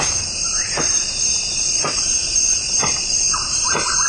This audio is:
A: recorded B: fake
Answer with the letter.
B